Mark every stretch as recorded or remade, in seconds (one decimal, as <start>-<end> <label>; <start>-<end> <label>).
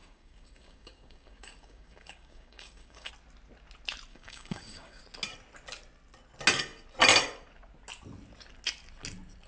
0.0-3.1 remade; 3.1-4.1 recorded; 4.1-5.0 remade; 5.0-9.5 recorded